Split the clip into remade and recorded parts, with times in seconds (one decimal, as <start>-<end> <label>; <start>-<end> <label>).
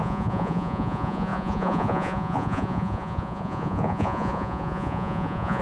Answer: 0.0-5.6 remade